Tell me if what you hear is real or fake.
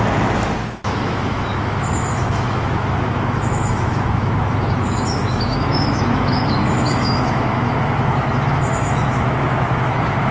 fake